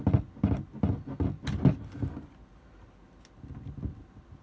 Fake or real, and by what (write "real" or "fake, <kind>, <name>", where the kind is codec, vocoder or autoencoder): real